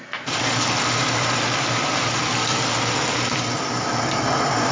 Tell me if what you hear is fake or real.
real